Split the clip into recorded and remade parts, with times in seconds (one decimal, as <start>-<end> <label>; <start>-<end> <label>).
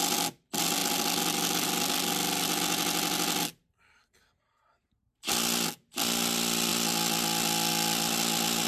0.0-8.7 recorded